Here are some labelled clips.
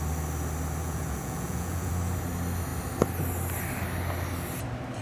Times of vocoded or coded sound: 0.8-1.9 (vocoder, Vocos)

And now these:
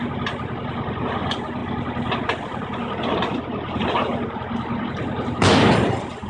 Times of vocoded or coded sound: none

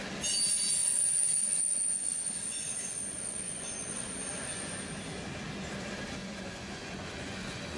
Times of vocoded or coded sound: 0.8-4.8 (vocoder, Vocos); 6.2-7.8

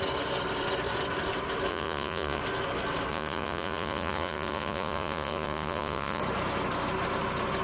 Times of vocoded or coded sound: 1.7-2.4 (vocoder, Vocos); 3.1-6.2

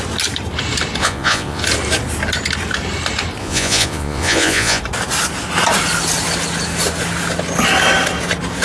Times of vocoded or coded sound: 1.0-1.6 (vocoder, Vocos); 3.4-4.8

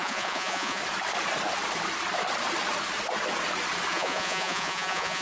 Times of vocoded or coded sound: 0.0-0.8 (vocoder, Vocos); 3.9-5.2